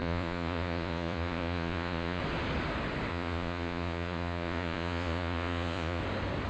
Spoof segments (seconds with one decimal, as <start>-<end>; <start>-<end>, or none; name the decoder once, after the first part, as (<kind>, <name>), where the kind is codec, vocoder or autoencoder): 0.0-2.2 (vocoder, Vocos); 3.1-6.0